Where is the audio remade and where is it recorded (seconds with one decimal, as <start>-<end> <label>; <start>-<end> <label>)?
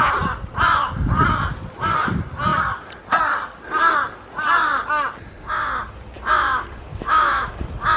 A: 0.0-6.9 recorded; 6.9-7.5 remade; 7.5-8.0 recorded